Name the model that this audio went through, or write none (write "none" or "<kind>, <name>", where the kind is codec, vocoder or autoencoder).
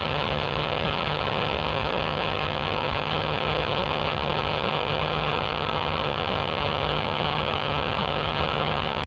vocoder, HiFi-GAN